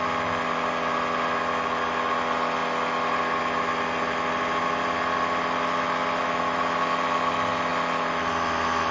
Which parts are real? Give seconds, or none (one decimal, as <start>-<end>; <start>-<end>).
0.0-7.7